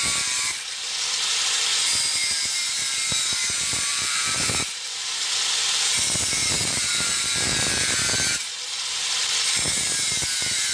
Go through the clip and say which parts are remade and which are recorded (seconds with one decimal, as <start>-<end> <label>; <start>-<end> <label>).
0.0-3.9 recorded; 3.9-5.1 remade; 5.1-6.4 recorded; 6.4-7.3 remade; 7.3-10.7 recorded